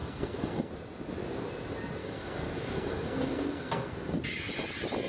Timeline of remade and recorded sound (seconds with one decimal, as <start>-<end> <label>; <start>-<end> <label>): 0.0-0.7 remade; 0.7-2.0 recorded; 2.0-4.2 remade; 4.2-5.1 recorded